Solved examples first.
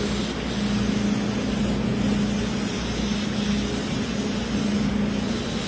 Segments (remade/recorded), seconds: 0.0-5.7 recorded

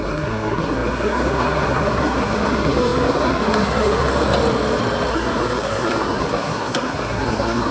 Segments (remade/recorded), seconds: 0.0-4.1 remade; 4.1-5.1 recorded; 5.1-7.7 remade